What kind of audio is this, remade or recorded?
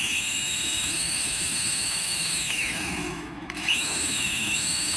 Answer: remade